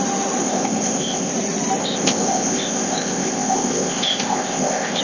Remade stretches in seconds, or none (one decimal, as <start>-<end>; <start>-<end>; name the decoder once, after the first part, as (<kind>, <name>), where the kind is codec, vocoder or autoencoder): 0.4-1.3 (codec, ZipCodec); 1.8-5.0